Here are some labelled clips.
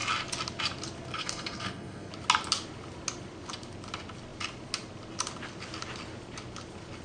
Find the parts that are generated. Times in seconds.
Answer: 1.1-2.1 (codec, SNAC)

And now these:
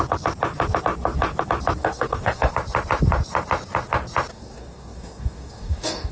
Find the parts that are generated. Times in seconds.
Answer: 1.8-2.5 (codec, DAC); 4.3-6.1

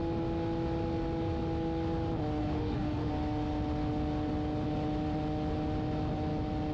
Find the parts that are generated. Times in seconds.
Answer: 2.4-3.1 (autoencoder, DAC-VAE)

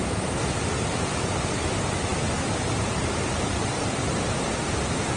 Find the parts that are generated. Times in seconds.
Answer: none

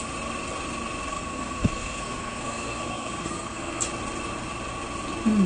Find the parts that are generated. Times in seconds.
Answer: 1.1-3.8 (codec, SNAC)

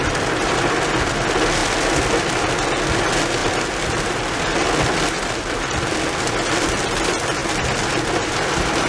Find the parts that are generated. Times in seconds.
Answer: 1.6-2.4 (vocoder, BigVGAN v2); 3.4-5.9; 7.4-8.9

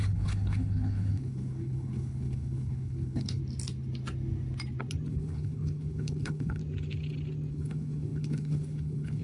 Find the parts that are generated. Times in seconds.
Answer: 0.0-3.4 (codec, HILCodec); 5.1-6.6; 7.5-9.2